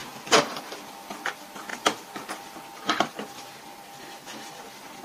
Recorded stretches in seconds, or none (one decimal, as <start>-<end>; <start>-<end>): 0.0-5.0